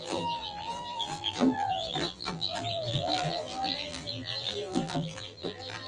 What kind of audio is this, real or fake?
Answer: fake